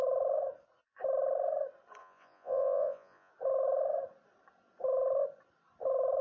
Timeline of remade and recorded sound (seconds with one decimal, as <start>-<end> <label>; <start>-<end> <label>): 0.0-2.0 recorded; 2.0-3.3 remade; 3.3-6.2 recorded